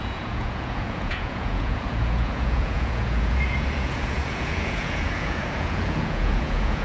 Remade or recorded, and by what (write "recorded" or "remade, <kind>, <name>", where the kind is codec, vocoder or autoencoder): remade, vocoder, Vocos